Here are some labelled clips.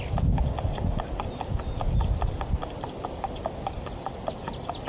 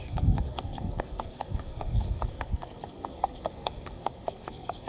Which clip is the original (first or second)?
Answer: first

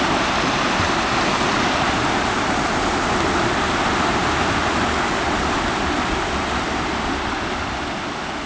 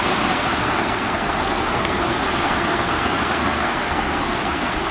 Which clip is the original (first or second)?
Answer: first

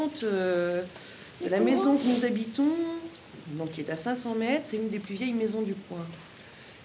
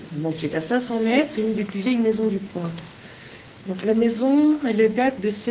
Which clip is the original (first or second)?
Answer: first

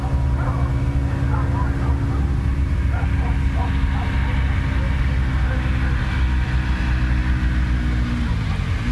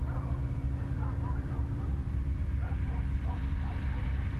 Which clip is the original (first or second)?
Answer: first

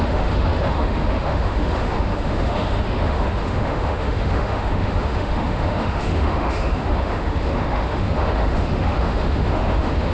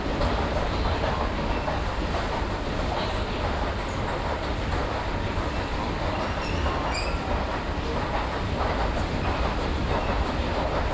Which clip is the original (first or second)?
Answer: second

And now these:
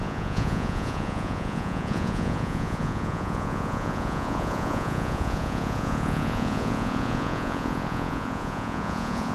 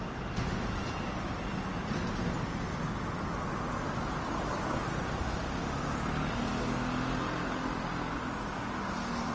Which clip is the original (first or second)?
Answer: second